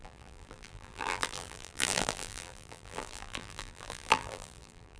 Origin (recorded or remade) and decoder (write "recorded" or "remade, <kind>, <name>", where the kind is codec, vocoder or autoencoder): remade, vocoder, BigVGAN v2